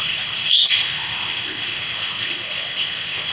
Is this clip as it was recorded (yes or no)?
no